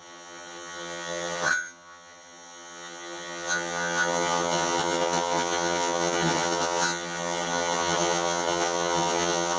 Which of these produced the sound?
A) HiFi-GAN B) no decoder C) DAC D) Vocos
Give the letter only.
A